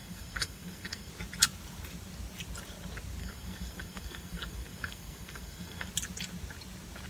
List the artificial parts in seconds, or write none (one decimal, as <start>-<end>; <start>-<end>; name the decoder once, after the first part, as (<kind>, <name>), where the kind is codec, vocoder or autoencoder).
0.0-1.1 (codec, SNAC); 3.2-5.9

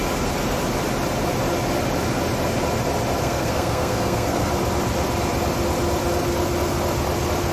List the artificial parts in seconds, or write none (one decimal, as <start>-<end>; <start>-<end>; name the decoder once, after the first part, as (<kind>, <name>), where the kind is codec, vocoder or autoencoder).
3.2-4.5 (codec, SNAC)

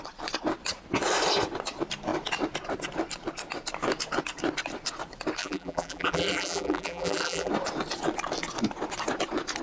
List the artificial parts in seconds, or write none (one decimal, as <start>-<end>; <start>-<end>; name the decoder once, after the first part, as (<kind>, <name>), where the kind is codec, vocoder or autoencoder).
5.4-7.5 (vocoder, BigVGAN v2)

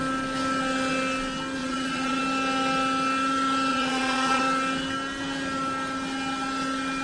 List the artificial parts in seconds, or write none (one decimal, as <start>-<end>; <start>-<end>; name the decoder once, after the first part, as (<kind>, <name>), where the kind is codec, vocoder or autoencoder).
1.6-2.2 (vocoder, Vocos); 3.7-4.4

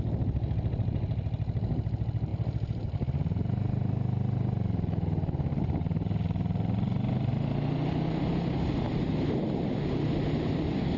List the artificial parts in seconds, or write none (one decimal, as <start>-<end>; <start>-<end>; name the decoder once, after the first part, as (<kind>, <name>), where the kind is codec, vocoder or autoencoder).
none